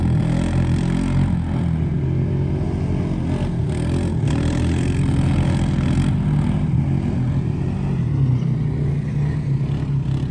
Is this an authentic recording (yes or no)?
yes